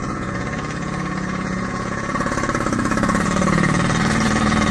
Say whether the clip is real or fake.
fake